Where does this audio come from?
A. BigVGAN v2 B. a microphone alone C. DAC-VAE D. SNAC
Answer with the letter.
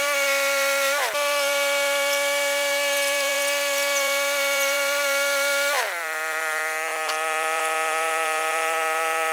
A